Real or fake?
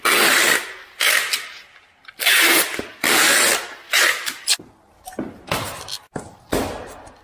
real